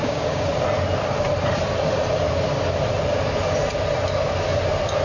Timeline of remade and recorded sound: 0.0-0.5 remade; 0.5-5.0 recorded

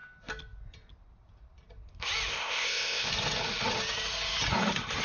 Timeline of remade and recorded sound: 0.0-2.3 recorded; 2.3-3.1 remade; 3.1-5.0 recorded

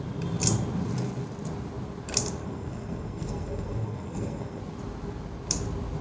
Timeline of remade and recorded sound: 0.0-2.4 recorded; 2.4-4.6 remade; 4.6-6.0 recorded

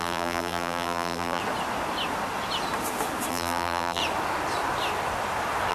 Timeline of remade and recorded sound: 0.0-1.4 remade; 1.4-3.3 recorded; 3.3-4.0 remade; 4.0-5.7 recorded

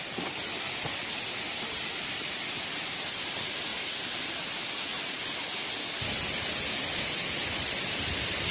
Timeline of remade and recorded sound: 0.0-8.5 recorded

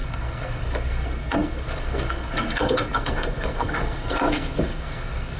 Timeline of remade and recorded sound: 0.0-5.4 remade